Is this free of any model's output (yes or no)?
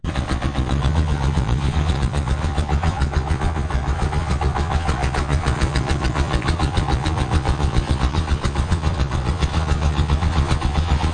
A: no